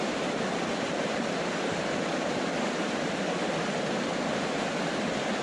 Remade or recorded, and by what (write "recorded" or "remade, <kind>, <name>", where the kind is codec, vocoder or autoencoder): remade, vocoder, BigVGAN v2